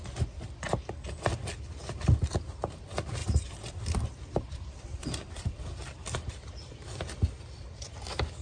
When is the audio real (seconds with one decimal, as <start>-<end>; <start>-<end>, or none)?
0.0-1.8; 2.6-3.2; 5.6-8.4